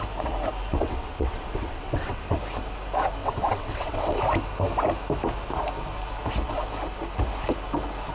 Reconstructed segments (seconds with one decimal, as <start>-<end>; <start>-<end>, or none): 0.7-2.4; 3.2-4.2